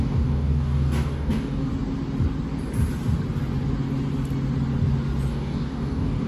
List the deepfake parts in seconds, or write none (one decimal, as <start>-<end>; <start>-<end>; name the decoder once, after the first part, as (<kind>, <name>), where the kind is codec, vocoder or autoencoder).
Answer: 0.0-1.7 (codec, DAC); 5.3-6.3